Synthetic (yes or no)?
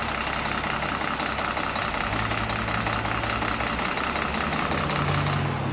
no